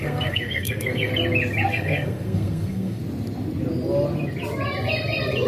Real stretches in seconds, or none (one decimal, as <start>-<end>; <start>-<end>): 1.1-1.7; 3.0-5.5